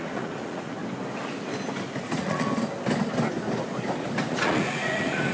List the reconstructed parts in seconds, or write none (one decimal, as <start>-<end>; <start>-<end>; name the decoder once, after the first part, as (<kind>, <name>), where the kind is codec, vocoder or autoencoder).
0.0-0.8 (vocoder, Vocos); 2.1-2.5; 4.3-5.3